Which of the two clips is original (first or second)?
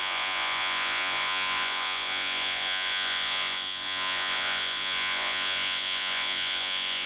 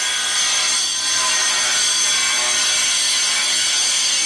second